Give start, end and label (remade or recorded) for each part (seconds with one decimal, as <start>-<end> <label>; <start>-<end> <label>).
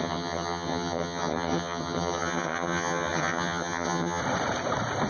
0.0-4.2 remade; 4.2-5.1 recorded